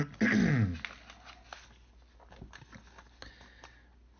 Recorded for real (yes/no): yes